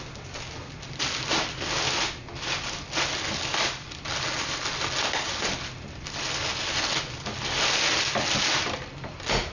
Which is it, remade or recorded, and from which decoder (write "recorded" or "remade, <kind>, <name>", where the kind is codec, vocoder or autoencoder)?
recorded